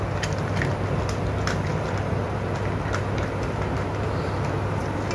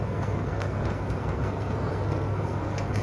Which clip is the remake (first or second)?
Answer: second